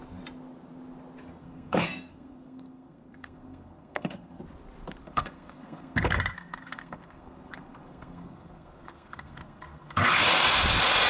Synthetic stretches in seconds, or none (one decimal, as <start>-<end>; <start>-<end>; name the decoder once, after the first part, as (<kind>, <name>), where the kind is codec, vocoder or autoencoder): 1.4-4.4 (codec, SNAC); 5.0-10.2